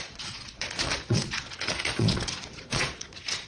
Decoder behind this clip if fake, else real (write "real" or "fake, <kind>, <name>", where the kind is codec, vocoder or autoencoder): fake, vocoder, Vocos